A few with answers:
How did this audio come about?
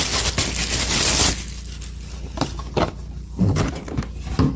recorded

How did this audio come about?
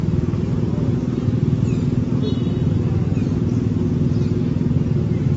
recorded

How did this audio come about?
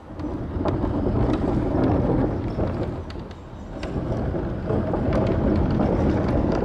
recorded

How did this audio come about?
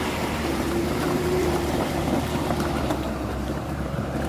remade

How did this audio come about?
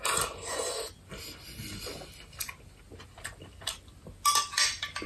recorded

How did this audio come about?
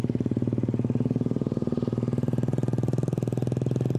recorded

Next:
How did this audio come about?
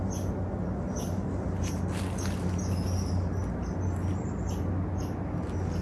recorded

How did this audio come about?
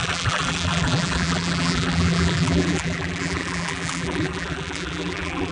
remade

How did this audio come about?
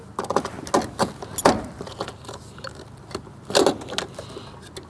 recorded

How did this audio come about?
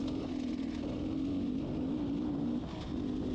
recorded